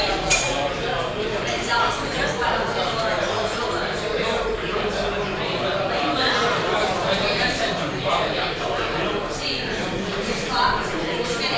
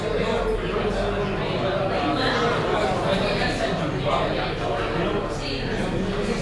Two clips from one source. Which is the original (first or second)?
second